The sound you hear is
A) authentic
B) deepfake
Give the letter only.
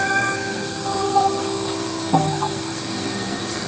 B